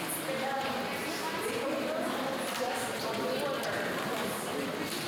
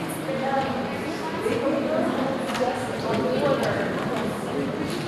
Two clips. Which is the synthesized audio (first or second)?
first